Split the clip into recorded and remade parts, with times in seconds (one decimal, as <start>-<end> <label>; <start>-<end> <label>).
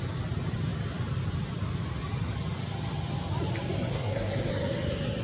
0.0-3.9 recorded; 3.9-4.5 remade; 4.5-5.2 recorded